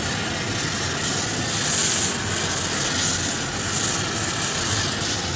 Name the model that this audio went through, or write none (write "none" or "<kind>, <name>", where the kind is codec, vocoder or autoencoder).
none